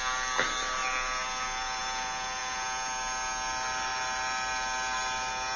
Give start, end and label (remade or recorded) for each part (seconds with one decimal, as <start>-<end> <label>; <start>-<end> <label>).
0.0-5.6 recorded